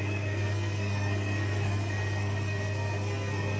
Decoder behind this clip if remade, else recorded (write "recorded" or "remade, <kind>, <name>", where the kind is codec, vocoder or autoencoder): remade, codec, SNAC